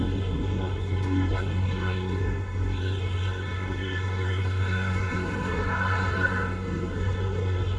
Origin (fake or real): fake